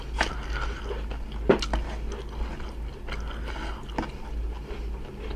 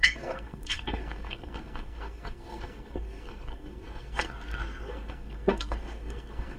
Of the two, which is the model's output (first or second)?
second